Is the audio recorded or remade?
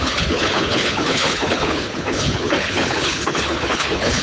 remade